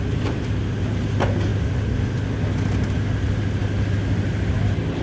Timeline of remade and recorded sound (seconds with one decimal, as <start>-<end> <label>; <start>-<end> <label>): 0.0-5.0 recorded